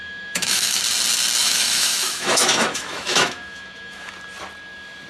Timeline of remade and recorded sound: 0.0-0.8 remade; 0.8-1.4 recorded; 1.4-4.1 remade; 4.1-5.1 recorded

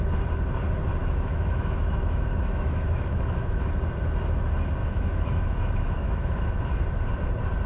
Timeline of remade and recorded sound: 0.0-1.0 recorded; 1.0-3.6 remade; 3.6-4.8 recorded; 4.8-6.6 remade; 6.6-7.7 recorded

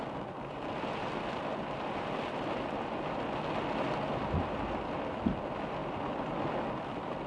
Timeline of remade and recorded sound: 0.0-7.3 recorded

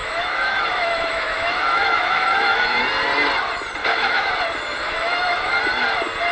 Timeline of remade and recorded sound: 0.0-2.8 remade; 2.8-3.8 recorded; 3.8-4.3 remade; 4.3-4.8 recorded; 4.8-5.6 remade; 5.6-6.3 recorded

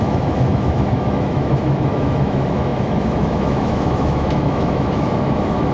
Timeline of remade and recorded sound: 0.0-5.7 remade

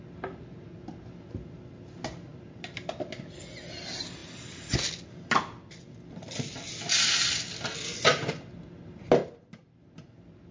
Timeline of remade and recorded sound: 0.0-10.5 recorded

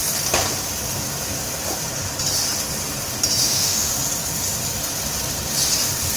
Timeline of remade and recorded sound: 0.0-3.4 recorded; 3.4-3.9 remade; 3.9-6.2 recorded